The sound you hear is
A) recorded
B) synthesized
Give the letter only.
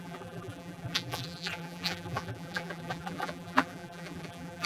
B